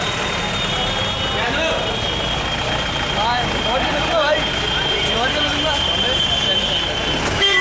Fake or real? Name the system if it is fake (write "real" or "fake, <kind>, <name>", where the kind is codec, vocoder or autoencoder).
real